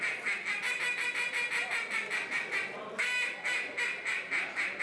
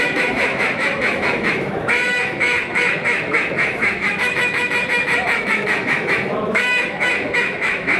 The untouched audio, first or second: first